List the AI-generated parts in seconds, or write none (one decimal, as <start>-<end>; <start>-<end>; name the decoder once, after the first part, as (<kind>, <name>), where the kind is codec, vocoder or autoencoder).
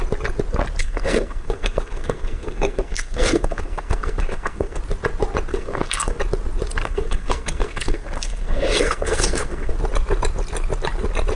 0.8-4.8 (codec, SNAC); 5.5-6.2; 6.8-9.7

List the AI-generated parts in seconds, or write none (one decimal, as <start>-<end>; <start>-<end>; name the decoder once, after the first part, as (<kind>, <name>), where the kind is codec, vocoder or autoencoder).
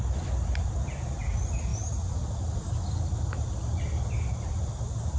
none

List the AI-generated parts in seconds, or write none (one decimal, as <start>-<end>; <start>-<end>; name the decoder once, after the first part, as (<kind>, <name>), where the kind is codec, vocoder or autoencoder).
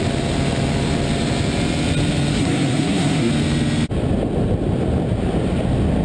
2.3-3.3 (codec, SNAC)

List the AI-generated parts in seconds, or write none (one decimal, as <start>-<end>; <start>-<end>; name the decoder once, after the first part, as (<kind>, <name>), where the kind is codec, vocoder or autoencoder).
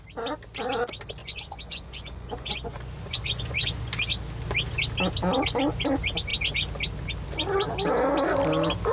1.2-3.9 (vocoder, Vocos)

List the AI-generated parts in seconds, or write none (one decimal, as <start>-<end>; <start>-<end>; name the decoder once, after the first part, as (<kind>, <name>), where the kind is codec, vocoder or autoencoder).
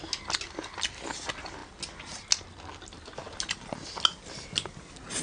none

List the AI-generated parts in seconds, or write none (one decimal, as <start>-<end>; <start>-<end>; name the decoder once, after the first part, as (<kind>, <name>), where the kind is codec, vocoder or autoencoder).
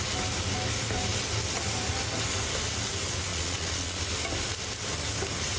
3.3-4.0 (vocoder, Vocos)